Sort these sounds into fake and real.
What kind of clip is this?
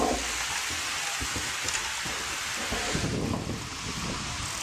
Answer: real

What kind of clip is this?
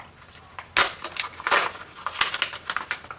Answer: real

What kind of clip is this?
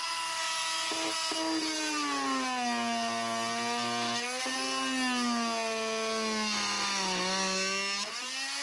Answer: real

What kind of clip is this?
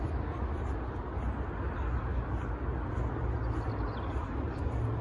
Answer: real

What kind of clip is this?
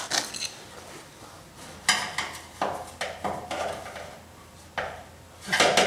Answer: real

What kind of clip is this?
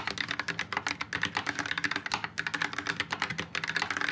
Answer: real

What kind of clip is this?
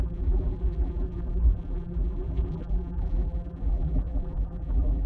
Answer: fake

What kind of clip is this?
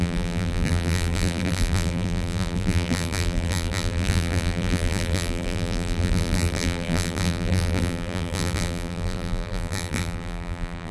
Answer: fake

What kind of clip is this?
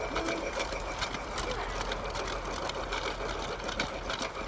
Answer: real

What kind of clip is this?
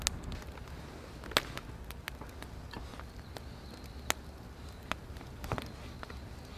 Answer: real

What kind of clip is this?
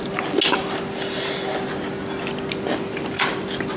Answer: real